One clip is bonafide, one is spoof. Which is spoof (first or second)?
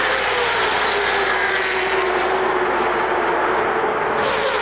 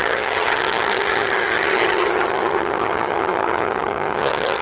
second